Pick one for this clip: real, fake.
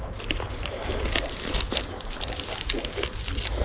real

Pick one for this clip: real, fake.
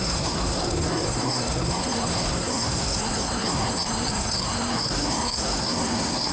fake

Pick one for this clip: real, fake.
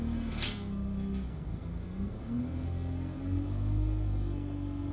fake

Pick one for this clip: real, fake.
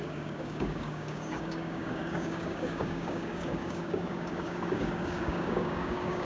fake